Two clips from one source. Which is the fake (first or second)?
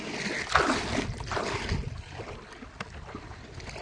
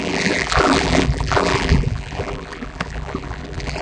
second